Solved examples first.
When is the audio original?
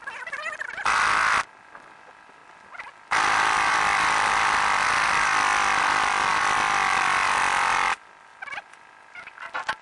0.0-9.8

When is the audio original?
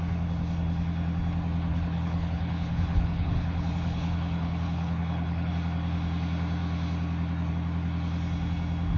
0.0-1.7; 5.5-9.0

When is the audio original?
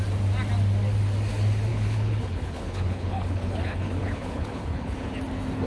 0.0-1.7; 5.1-5.7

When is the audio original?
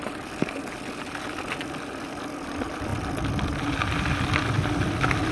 0.0-5.3